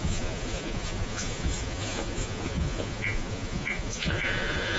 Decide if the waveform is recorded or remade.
remade